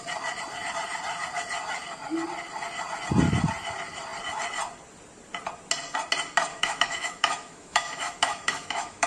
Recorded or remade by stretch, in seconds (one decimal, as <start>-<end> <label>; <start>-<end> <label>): 0.0-6.5 recorded; 6.5-9.1 remade